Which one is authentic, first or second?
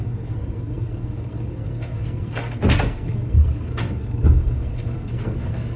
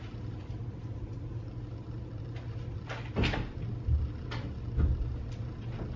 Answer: second